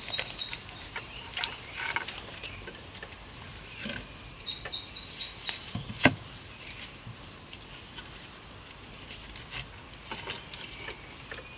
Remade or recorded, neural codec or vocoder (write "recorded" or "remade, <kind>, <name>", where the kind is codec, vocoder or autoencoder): recorded